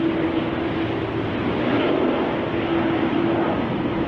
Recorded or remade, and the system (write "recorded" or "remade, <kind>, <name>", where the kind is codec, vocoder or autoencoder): recorded